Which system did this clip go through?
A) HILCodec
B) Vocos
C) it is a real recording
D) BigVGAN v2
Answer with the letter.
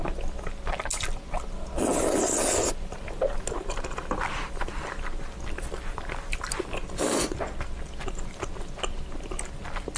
C